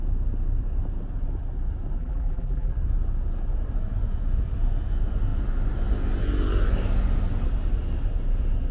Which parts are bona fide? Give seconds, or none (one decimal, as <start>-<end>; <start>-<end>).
0.0-2.0; 2.7-8.7